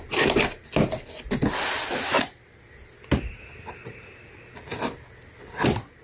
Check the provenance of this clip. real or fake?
real